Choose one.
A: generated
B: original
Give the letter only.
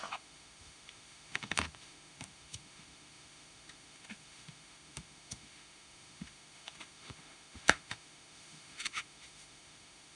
A